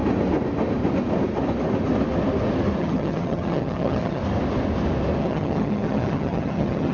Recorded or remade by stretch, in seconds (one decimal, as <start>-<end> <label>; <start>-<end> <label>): 0.0-2.8 recorded; 2.8-4.2 remade; 4.2-5.2 recorded; 5.2-6.9 remade